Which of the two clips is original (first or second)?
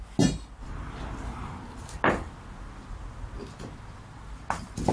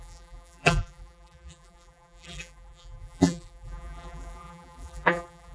first